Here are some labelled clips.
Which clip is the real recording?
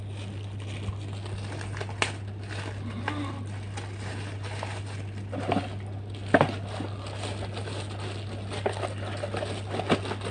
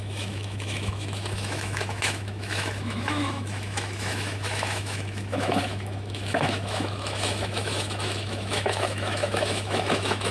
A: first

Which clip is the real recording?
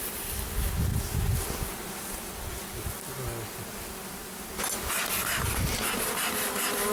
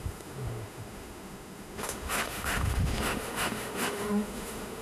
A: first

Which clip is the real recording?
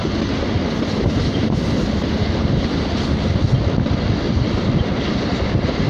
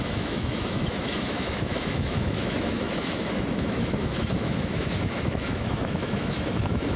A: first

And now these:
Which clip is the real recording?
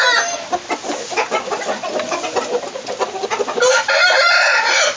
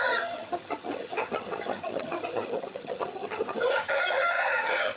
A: first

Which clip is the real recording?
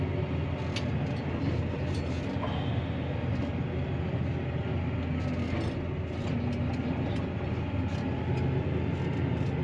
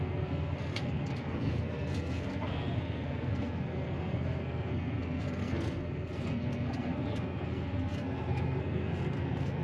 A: first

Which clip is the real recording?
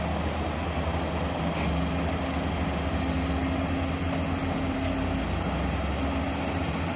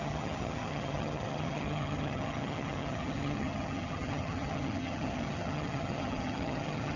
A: first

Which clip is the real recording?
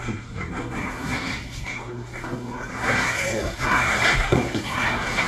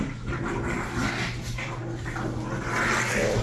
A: second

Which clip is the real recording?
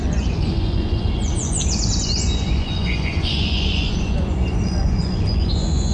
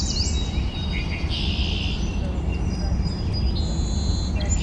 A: second